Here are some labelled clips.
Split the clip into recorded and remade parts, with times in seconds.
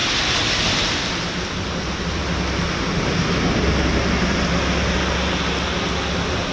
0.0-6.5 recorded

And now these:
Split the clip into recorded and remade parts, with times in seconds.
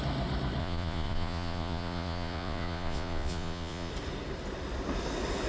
0.0-0.6 recorded; 0.6-3.9 remade; 3.9-5.5 recorded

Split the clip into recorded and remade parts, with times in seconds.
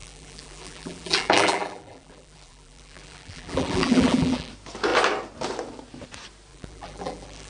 0.0-4.5 remade; 4.5-6.5 recorded; 6.5-7.5 remade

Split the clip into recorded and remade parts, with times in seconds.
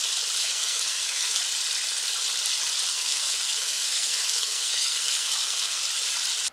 0.0-0.4 recorded; 0.4-1.4 remade; 1.4-2.9 recorded; 2.9-5.8 remade; 5.8-6.5 recorded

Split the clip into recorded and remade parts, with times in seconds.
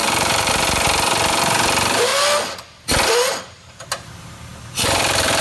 0.0-2.1 remade; 2.1-3.4 recorded; 3.4-5.4 remade